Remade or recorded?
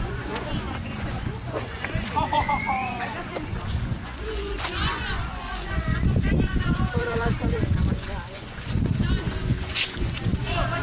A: remade